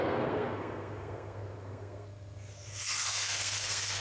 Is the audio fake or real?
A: fake